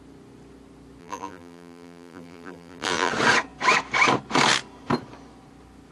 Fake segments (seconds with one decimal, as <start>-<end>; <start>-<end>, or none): 1.0-3.1